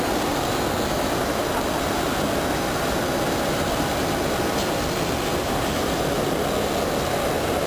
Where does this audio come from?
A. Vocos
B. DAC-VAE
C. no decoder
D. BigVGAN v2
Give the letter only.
C